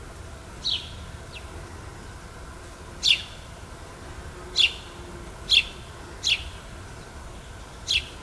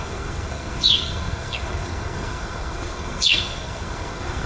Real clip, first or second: first